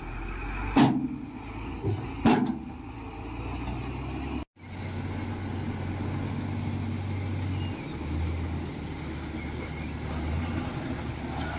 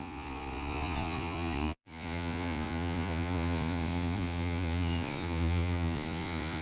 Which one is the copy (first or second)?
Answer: second